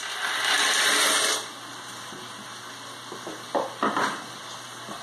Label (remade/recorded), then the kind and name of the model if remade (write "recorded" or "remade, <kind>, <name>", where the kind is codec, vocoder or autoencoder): recorded